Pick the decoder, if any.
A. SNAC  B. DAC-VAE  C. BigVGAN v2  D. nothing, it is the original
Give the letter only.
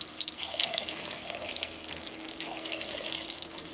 A